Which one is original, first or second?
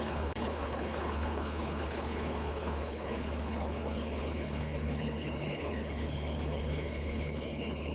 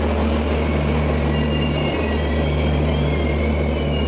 second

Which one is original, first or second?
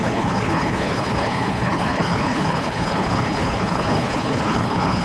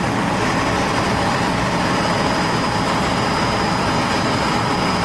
second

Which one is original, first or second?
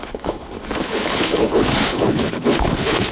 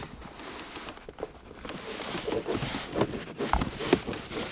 second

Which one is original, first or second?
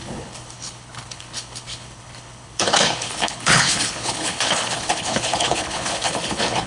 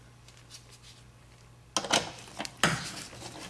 second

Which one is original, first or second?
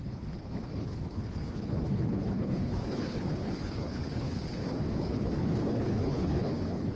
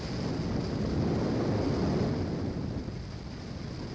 second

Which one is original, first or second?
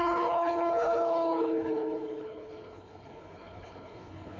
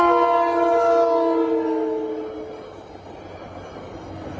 second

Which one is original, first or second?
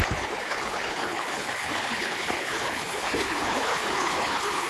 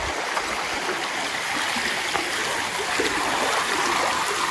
second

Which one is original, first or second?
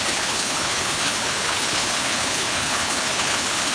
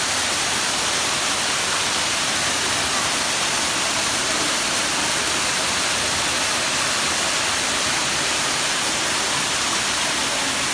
second